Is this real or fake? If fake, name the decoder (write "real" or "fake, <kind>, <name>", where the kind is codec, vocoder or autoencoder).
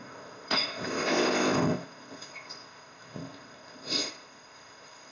fake, codec, ZipCodec